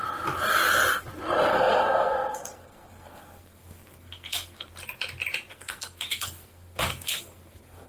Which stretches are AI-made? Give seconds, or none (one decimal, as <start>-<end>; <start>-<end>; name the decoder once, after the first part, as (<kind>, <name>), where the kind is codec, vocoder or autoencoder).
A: 1.5-4.7 (codec, SNAC); 5.5-7.9